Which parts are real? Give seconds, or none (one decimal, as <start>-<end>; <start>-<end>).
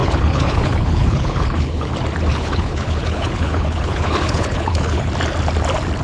1.9-2.3; 5.1-6.0